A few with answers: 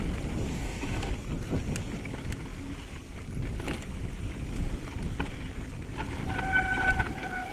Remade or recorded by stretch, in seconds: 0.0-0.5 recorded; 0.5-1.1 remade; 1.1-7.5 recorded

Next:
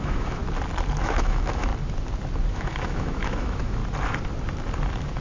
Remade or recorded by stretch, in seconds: 0.0-0.4 remade; 0.4-1.0 recorded; 1.0-1.7 remade; 1.7-2.5 recorded; 2.5-3.8 remade; 3.8-5.2 recorded